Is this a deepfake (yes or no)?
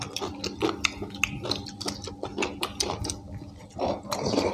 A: no